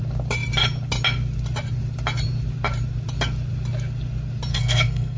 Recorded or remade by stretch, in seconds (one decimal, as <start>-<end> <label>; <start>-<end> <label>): 0.0-4.5 recorded; 4.5-5.2 remade